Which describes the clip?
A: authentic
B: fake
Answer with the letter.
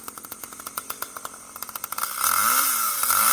B